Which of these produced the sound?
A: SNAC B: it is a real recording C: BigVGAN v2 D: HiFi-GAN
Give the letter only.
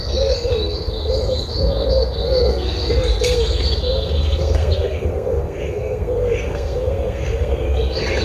A